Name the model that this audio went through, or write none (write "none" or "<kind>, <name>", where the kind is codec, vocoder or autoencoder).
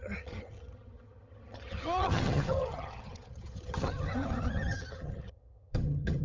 vocoder, HiFi-GAN